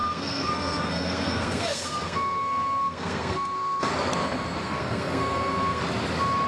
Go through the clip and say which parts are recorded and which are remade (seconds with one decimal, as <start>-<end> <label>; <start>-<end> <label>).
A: 0.0-3.9 remade; 3.9-4.6 recorded; 4.6-5.8 remade; 5.8-6.5 recorded